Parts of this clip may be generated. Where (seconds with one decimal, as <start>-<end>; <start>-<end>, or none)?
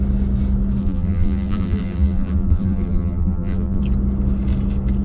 0.8-3.8